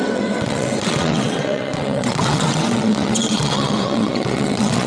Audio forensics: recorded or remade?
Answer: remade